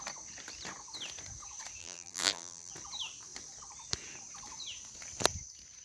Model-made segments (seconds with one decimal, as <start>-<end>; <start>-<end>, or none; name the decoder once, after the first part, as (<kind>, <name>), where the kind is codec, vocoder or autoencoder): 1.8-2.7 (vocoder, BigVGAN v2)